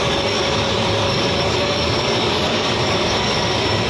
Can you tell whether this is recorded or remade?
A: remade